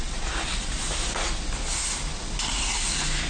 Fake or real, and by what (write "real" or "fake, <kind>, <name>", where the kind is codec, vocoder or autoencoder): real